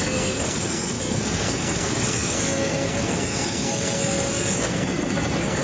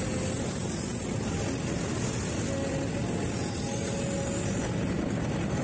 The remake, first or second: first